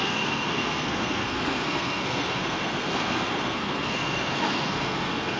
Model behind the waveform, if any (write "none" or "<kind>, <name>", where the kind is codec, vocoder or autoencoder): codec, SNAC